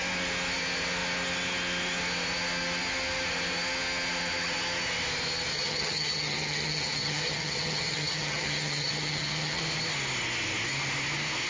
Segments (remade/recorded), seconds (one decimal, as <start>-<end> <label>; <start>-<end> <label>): 0.0-5.5 recorded; 5.5-9.6 remade; 9.6-11.5 recorded